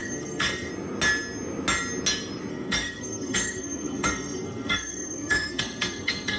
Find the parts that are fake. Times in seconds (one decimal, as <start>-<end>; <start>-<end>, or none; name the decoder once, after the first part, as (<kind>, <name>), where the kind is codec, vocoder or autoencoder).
0.0-0.7 (codec, SNAC); 2.5-6.4